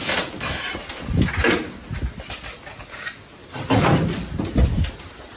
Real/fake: real